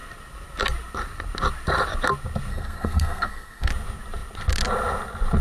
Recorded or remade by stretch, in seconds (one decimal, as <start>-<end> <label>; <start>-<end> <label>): 0.0-2.5 recorded; 2.5-3.7 remade; 3.7-5.4 recorded